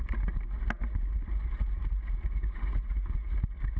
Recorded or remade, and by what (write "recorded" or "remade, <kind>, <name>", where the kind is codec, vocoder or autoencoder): recorded